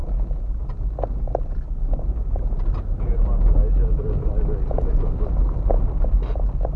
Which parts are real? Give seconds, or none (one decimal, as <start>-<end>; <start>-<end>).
0.0-6.8